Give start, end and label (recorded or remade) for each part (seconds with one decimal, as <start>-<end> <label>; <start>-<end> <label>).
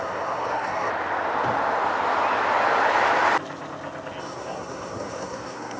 0.0-0.9 remade; 0.9-4.2 recorded; 4.2-5.8 remade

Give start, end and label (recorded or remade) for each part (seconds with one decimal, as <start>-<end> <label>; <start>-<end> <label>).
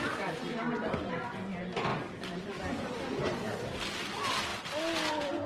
0.0-5.5 recorded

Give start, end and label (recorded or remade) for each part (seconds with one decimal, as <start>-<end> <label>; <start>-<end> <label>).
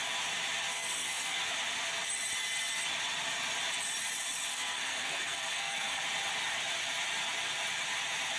0.0-0.7 recorded; 0.7-1.4 remade; 1.4-4.5 recorded; 4.5-6.0 remade; 6.0-8.4 recorded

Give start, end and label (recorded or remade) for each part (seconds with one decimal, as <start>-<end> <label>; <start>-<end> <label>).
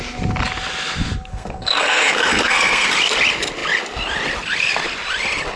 0.0-1.3 recorded; 1.3-2.9 remade; 2.9-5.6 recorded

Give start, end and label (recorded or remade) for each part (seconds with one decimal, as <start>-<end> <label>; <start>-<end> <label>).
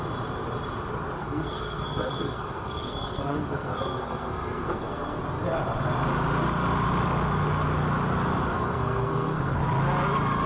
0.0-1.2 recorded; 1.2-5.2 remade; 5.2-8.5 recorded; 8.5-9.6 remade; 9.6-10.5 recorded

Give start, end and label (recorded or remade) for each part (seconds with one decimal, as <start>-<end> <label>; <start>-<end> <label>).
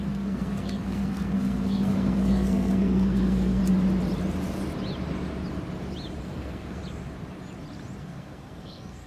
0.0-3.6 remade; 3.6-6.2 recorded; 6.2-6.8 remade; 6.8-8.0 recorded; 8.0-9.1 remade